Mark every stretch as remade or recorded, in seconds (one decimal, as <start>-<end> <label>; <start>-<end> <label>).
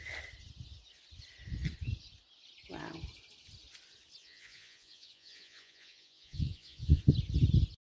0.0-4.2 recorded; 4.2-7.0 remade; 7.0-7.8 recorded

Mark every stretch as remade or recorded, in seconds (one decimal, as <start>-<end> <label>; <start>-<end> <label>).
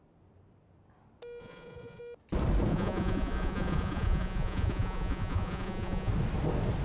0.0-1.4 recorded; 1.4-2.0 remade; 2.0-2.7 recorded; 2.7-6.1 remade; 6.1-6.8 recorded